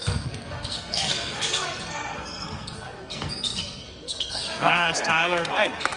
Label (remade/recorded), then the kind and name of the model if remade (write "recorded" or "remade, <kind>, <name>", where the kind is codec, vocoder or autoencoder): remade, codec, SNAC